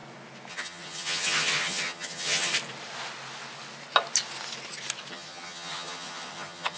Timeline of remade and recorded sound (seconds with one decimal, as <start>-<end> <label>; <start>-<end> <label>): 0.0-0.5 recorded; 0.5-2.5 remade; 2.5-5.1 recorded; 5.1-6.8 remade